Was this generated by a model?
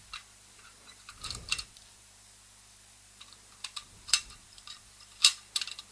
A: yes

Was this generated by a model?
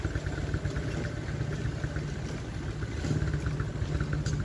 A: no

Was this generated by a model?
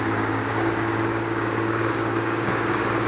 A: yes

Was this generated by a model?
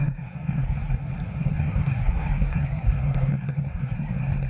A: yes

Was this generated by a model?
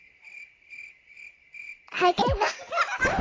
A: no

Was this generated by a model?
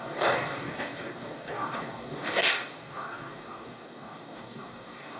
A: yes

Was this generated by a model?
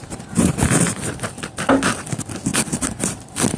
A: no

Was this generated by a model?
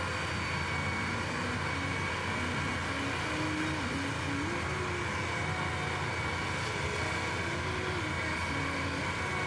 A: no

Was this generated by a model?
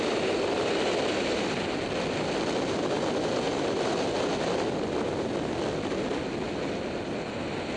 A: no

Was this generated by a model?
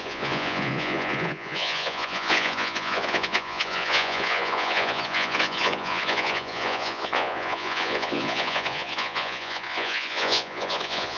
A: yes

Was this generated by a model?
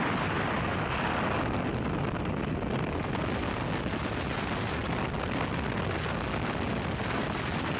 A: no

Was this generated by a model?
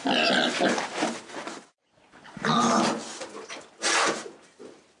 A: no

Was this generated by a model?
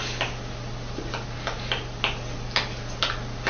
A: no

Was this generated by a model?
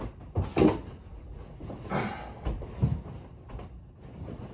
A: no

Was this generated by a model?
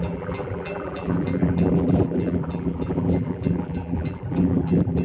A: yes